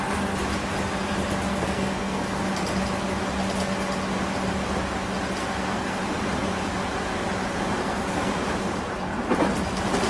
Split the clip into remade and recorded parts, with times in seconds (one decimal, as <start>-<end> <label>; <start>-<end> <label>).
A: 0.0-1.5 recorded; 1.5-2.4 remade; 2.4-5.4 recorded; 5.4-6.0 remade; 6.0-7.8 recorded; 7.8-8.3 remade; 8.3-10.1 recorded